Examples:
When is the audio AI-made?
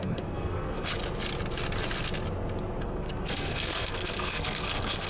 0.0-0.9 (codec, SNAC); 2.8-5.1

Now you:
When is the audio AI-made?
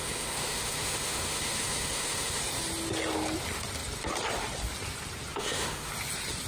0.0-2.4 (autoencoder, DAC-VAE); 5.3-5.9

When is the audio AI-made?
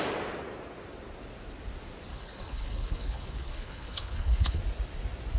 2.1-4.6 (codec, HILCodec)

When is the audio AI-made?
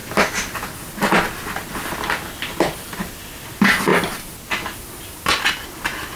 none